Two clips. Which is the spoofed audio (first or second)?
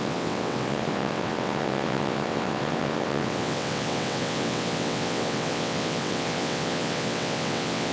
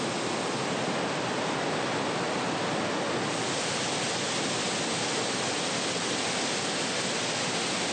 first